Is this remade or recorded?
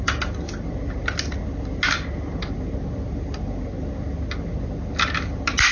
recorded